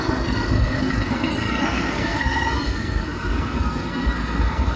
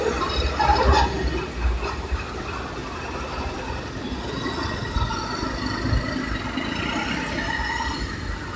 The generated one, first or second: first